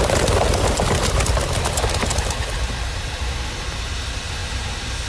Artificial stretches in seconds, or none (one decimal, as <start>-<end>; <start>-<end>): none